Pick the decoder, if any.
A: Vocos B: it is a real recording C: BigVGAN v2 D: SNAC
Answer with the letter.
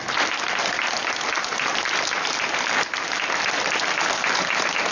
B